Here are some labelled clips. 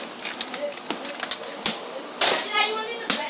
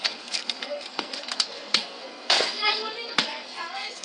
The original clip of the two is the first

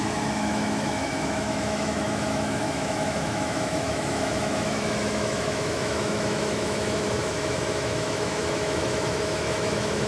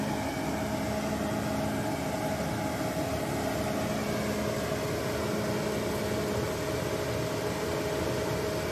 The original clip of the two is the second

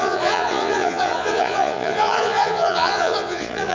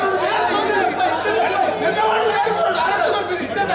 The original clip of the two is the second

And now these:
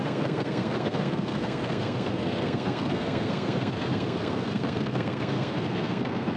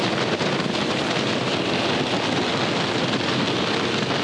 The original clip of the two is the second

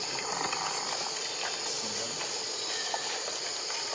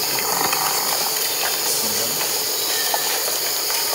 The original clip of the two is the first